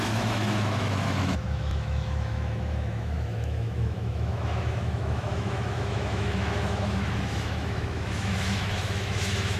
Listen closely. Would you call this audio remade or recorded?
remade